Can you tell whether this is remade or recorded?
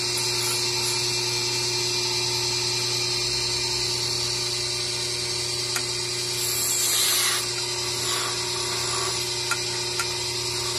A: recorded